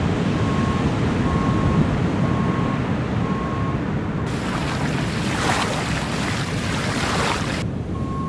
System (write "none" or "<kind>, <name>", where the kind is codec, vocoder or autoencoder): none